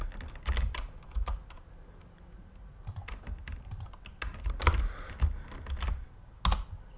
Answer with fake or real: real